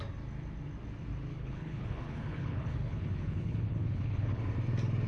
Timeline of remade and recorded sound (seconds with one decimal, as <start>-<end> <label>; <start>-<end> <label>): 0.0-1.3 recorded; 1.3-4.4 remade; 4.4-5.1 recorded